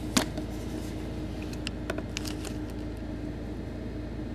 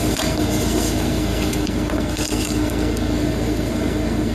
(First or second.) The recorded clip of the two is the first